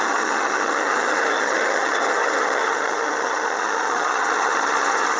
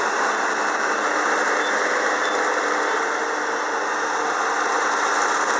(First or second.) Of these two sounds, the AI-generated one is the first